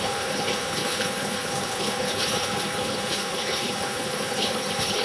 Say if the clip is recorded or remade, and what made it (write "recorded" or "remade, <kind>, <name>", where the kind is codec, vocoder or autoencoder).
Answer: remade, codec, HILCodec